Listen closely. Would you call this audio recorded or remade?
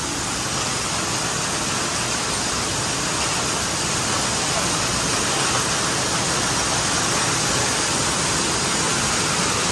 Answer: recorded